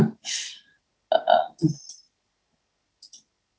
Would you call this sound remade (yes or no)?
no